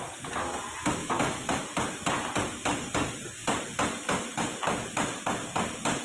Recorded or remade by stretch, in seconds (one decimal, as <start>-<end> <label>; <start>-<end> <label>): 0.0-1.0 recorded; 1.0-1.6 remade; 1.6-6.0 recorded